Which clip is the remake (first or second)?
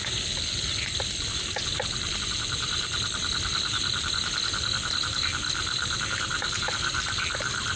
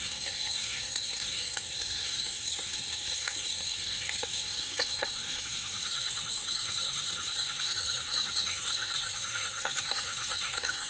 second